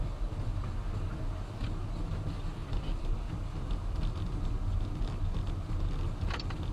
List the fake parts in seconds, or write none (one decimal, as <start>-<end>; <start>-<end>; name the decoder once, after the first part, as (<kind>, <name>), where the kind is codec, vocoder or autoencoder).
2.6-3.3 (vocoder, BigVGAN v2)

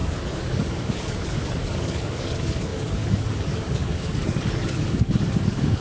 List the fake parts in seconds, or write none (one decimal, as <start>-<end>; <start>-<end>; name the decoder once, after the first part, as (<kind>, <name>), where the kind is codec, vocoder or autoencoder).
0.0-5.8 (codec, DAC)